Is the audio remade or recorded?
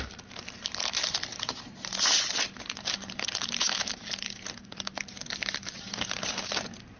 remade